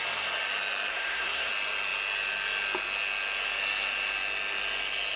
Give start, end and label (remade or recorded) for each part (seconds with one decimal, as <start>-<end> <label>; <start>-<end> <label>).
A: 0.0-0.9 recorded; 0.9-1.5 remade; 1.5-5.2 recorded